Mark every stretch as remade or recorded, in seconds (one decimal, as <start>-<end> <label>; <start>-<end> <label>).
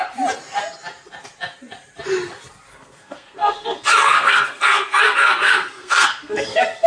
0.0-2.7 recorded; 2.7-6.9 remade